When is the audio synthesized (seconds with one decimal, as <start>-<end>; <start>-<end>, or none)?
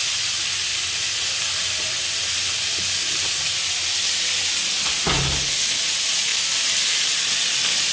none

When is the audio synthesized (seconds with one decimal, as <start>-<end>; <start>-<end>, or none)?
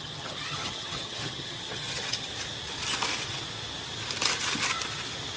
0.0-2.3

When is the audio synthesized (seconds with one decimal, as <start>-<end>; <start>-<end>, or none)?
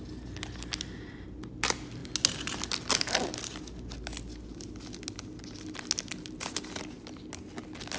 none